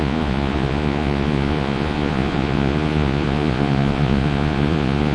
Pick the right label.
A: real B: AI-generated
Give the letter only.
B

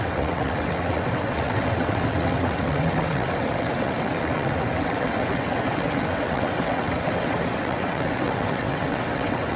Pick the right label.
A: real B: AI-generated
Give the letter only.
B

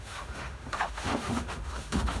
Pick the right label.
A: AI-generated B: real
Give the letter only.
A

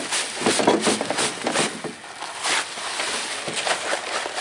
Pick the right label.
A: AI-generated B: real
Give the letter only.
B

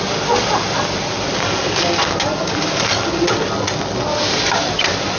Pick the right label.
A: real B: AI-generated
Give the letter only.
A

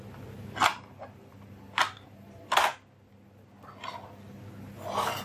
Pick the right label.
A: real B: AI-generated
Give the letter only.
A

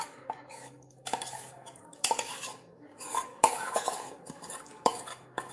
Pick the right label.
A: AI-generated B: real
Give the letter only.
A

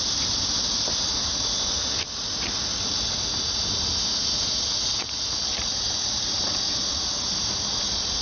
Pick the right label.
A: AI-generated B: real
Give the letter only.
B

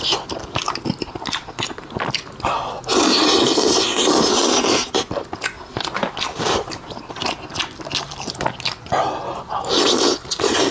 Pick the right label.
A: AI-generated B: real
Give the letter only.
B